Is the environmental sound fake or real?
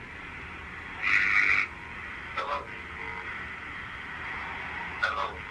real